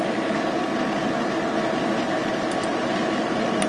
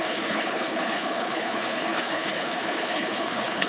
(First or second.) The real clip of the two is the first